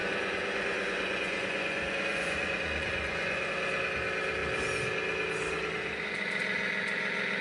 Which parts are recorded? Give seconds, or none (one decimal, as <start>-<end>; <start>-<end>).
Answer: 3.5-7.4